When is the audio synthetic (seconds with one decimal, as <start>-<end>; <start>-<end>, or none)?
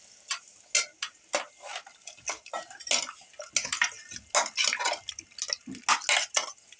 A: none